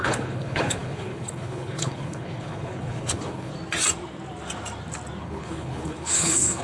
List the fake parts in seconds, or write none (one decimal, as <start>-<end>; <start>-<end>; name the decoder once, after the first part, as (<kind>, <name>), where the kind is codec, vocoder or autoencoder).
0.0-3.5 (codec, HILCodec); 5.2-6.6